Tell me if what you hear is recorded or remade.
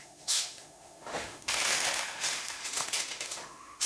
remade